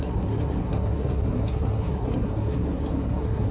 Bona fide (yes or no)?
no